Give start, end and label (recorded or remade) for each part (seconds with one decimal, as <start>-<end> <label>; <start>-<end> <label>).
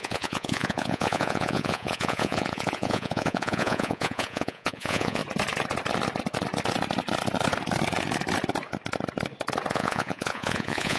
0.0-5.2 remade; 5.2-9.7 recorded; 9.7-11.0 remade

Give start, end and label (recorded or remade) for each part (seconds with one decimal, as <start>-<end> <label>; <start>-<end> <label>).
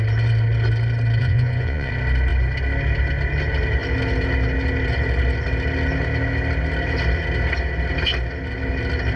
0.0-1.2 recorded; 1.2-1.9 remade; 1.9-9.2 recorded